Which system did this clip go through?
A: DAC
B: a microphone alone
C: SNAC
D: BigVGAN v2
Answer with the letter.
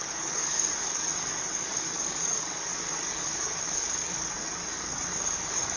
A